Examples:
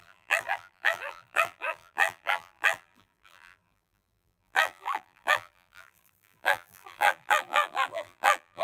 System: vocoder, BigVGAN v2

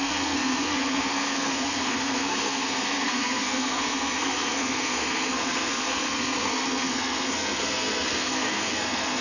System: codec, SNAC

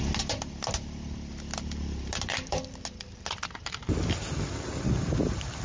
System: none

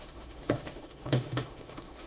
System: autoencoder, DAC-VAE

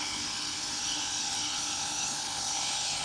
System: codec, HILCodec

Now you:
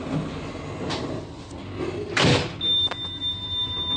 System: none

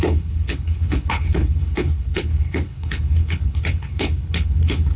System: codec, HILCodec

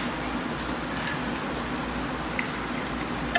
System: none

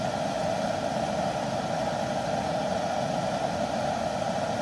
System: none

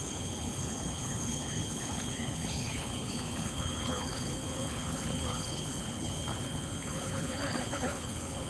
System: codec, HILCodec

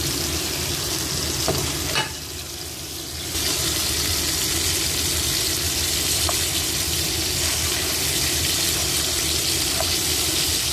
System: none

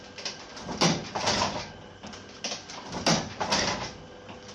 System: none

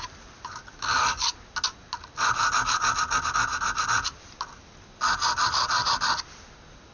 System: none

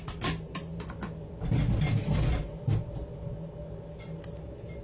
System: none